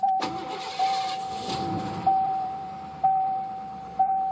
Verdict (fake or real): fake